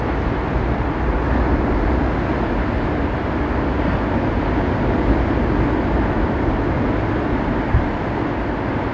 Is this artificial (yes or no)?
no